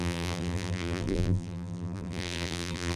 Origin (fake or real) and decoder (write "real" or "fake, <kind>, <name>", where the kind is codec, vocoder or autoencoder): fake, vocoder, BigVGAN v2